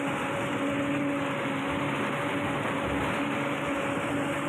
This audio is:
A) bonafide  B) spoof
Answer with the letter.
A